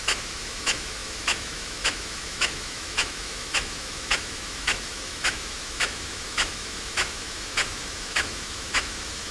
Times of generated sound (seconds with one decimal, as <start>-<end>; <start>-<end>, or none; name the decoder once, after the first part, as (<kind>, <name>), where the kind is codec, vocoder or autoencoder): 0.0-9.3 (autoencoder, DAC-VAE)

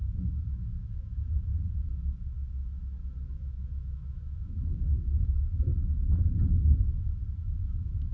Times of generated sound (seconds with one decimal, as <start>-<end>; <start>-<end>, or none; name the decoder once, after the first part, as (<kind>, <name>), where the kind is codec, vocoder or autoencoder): 0.0-1.5 (autoencoder, DAC-VAE); 3.3-5.7; 7.4-8.1

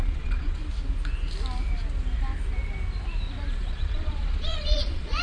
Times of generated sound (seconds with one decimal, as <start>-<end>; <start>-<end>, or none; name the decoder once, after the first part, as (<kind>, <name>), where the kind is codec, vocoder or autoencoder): 0.0-0.6 (vocoder, Vocos); 3.7-5.2

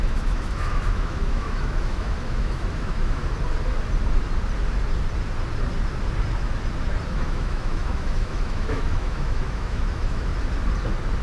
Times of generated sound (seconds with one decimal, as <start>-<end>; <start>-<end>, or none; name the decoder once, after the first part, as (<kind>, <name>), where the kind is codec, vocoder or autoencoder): 0.0-3.2 (autoencoder, DAC-VAE); 7.1-10.3

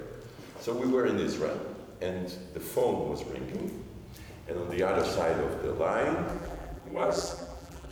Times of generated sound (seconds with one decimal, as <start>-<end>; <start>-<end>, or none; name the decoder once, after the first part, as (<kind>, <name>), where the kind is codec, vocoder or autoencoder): 6.3-7.9 (vocoder, BigVGAN v2)